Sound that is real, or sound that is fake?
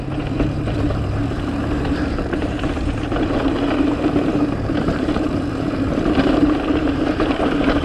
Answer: fake